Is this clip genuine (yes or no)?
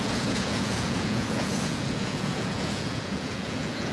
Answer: no